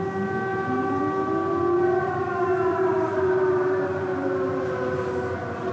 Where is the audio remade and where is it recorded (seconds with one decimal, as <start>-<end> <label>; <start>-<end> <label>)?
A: 0.0-0.5 recorded; 0.5-1.0 remade; 1.0-2.7 recorded; 2.7-4.3 remade; 4.3-5.7 recorded